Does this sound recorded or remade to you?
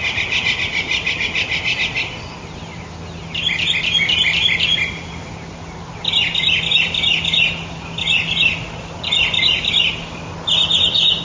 recorded